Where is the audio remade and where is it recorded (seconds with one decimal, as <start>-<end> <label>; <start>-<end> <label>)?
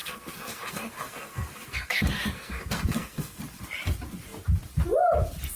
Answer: 0.0-3.4 remade; 3.4-5.6 recorded